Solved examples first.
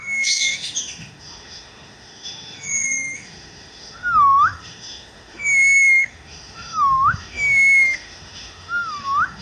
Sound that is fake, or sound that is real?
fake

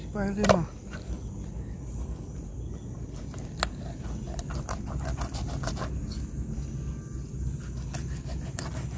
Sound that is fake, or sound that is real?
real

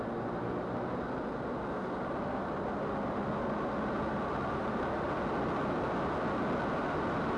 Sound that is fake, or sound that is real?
real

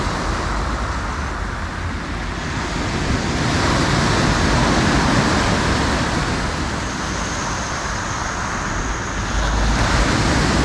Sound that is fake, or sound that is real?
real